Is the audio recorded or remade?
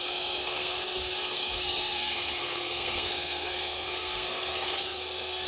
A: remade